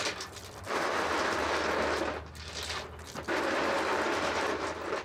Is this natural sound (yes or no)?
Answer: yes